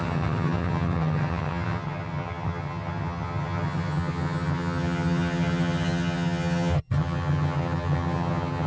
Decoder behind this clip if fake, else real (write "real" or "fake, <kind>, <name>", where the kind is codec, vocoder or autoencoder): fake, vocoder, HiFi-GAN